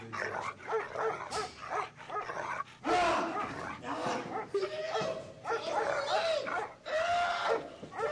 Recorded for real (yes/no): yes